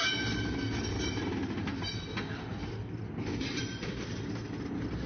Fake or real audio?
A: real